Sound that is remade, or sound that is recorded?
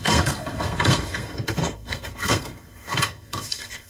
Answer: remade